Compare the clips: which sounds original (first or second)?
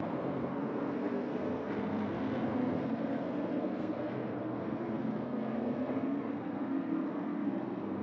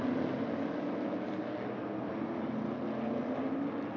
second